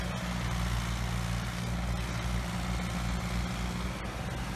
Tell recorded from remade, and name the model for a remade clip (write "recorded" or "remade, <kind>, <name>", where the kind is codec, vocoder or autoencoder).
recorded